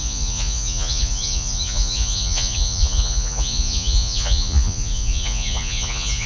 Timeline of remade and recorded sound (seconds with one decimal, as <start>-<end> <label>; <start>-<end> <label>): 0.0-6.3 remade

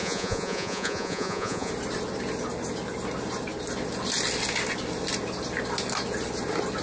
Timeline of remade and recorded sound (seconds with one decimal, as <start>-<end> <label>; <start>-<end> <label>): 0.0-1.7 remade; 1.7-6.8 recorded

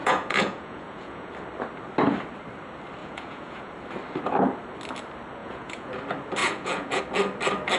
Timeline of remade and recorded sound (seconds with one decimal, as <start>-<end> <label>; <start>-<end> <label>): 0.0-1.3 remade; 1.3-3.0 recorded; 3.0-3.7 remade; 3.7-5.4 recorded; 5.4-5.9 remade; 5.9-6.4 recorded; 6.4-7.0 remade; 7.0-7.8 recorded

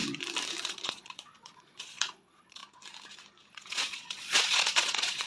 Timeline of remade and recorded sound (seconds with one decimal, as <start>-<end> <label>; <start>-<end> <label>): 0.0-0.6 recorded; 0.6-2.6 remade; 2.6-3.5 recorded; 3.5-5.3 remade

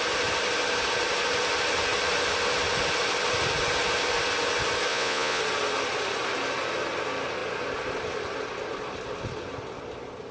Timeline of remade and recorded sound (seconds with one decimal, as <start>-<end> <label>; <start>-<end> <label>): 0.0-4.9 recorded; 4.9-5.4 remade; 5.4-10.3 recorded